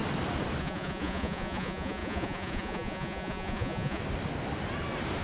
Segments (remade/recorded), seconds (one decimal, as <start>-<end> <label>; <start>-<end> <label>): 0.0-0.6 recorded; 0.6-4.0 remade; 4.0-5.2 recorded